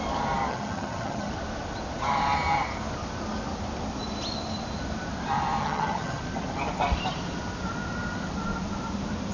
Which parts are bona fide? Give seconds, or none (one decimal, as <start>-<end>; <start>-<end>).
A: 0.0-0.5; 1.3-5.6; 6.2-9.3